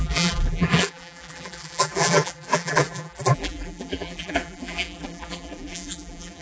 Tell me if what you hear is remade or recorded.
remade